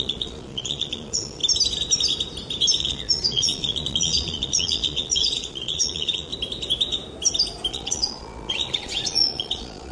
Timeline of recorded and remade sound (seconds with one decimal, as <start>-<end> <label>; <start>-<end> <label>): 0.0-1.4 remade; 1.4-2.8 recorded; 2.8-6.3 remade; 6.3-7.7 recorded; 7.7-9.9 remade